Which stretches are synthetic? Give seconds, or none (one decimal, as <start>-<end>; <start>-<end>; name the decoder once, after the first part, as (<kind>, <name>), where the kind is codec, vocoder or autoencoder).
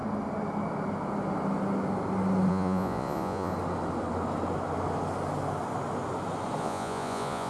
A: 2.5-3.5 (vocoder, Vocos); 6.6-7.5